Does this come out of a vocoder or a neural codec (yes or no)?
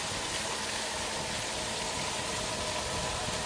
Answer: no